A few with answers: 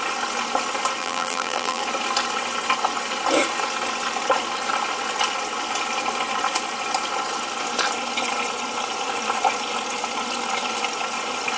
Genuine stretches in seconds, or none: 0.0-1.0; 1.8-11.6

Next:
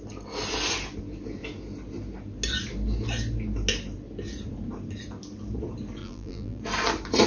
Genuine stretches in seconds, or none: 0.0-6.0; 6.6-7.3